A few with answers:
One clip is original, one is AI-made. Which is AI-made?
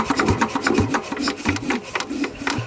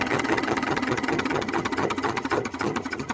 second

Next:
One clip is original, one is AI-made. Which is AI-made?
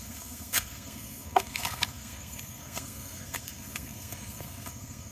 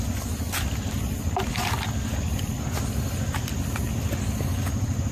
first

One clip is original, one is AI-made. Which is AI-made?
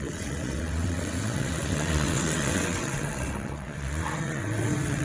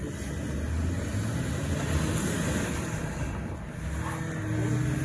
first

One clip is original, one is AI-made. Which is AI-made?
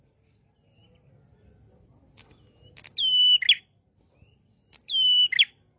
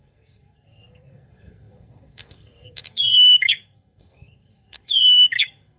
second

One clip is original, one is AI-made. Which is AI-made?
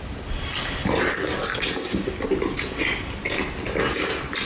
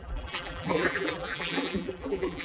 second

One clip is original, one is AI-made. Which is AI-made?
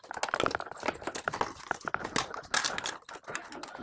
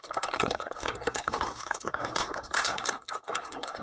second